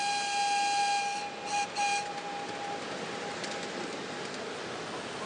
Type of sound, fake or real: real